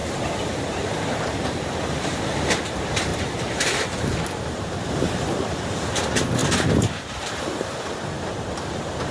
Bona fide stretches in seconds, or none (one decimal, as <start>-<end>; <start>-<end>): 0.0-0.7